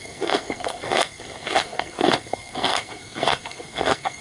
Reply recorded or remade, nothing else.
remade